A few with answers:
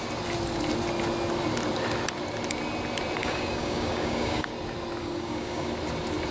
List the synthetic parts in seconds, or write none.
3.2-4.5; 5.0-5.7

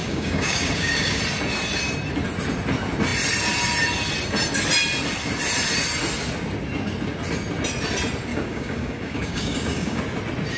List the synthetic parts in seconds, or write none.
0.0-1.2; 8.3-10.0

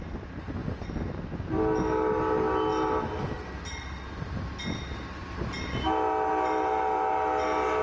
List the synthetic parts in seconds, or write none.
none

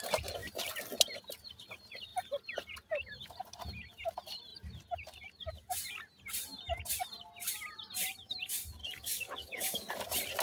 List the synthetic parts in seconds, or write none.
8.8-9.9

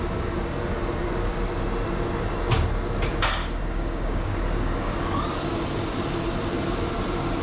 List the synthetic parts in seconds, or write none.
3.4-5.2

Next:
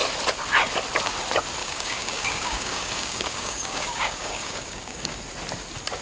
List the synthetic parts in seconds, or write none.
1.6-5.2